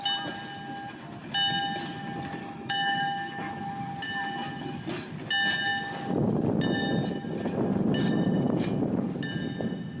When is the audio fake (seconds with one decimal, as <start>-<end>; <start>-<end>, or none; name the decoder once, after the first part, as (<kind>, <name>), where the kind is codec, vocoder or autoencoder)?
2.4-3.6 (autoencoder, DAC-VAE)